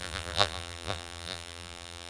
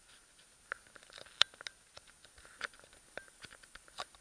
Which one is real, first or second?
second